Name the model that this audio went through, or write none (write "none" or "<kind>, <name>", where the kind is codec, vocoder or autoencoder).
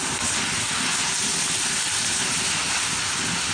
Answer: none